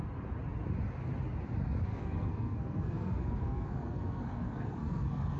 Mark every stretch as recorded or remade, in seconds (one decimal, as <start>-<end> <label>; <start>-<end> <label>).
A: 0.0-1.9 recorded; 1.9-5.4 remade